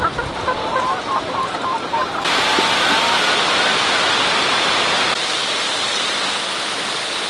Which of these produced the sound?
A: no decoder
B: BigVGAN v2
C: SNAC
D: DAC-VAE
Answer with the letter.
A